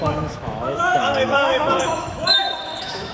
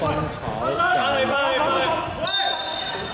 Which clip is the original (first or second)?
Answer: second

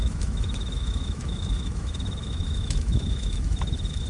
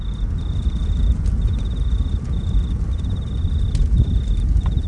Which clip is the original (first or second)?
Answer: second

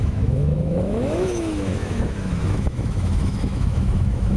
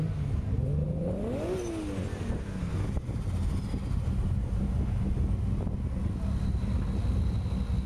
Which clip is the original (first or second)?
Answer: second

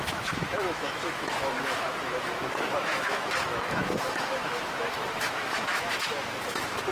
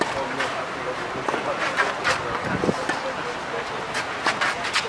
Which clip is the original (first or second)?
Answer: second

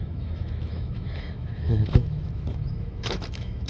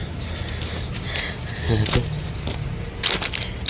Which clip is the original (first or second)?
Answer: second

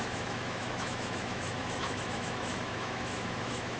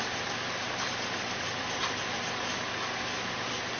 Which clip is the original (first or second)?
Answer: second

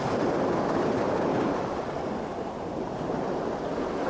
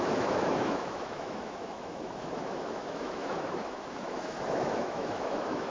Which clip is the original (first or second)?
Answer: first